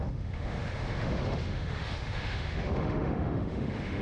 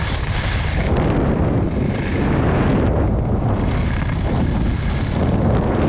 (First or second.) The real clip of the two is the second